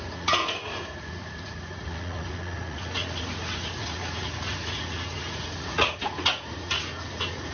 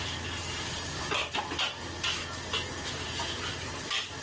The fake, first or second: first